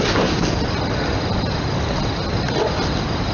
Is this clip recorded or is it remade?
recorded